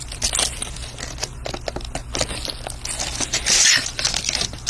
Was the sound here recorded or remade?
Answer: recorded